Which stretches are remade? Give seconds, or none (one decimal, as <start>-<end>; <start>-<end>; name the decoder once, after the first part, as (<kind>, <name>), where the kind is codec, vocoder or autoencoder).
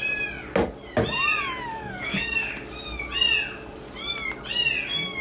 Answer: 1.7-2.5 (codec, DAC)